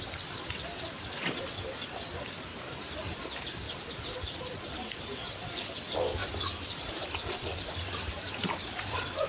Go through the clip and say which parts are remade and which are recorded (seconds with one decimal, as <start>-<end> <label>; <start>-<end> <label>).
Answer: 0.0-9.3 recorded